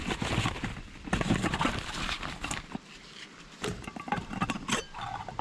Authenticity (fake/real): fake